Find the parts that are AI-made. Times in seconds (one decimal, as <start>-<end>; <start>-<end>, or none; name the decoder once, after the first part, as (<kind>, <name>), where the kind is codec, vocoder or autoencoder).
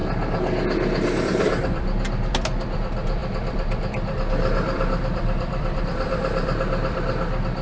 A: 1.2-7.6 (vocoder, BigVGAN v2)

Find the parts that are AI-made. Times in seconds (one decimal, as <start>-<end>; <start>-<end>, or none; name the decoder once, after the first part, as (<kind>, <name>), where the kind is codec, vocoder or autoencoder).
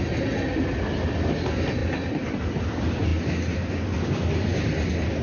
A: 1.8-2.3 (vocoder, BigVGAN v2)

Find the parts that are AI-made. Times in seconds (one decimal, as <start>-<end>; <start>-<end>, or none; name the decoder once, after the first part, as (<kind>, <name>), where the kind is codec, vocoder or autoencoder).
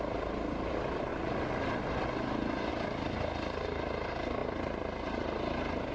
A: 0.0-1.1 (vocoder, BigVGAN v2); 2.7-4.4